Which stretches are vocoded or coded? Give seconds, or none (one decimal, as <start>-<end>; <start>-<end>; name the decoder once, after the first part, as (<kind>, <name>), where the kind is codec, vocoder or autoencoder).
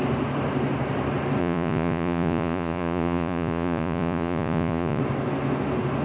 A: 1.4-5.0 (vocoder, Vocos)